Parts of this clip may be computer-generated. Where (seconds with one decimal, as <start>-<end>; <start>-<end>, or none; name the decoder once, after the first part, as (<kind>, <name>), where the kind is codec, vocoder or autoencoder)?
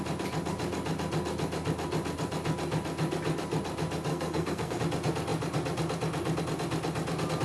4.1-4.8 (codec, SNAC)